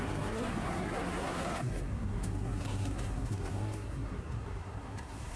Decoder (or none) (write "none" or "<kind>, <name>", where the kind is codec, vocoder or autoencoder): codec, SNAC